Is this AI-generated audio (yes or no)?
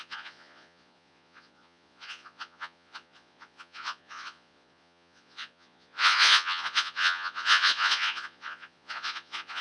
yes